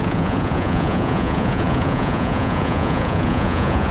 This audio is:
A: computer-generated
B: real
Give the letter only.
A